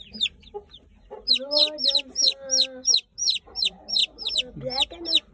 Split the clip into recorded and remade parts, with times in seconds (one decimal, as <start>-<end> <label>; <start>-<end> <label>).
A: 0.0-5.3 recorded